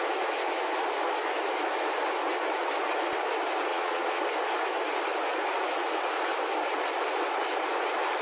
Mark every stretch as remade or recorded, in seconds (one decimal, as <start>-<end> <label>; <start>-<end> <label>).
0.0-3.7 recorded; 3.7-4.2 remade; 4.2-8.2 recorded